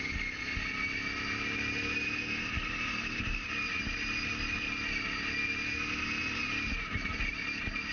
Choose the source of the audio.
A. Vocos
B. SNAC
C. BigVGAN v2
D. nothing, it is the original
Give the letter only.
D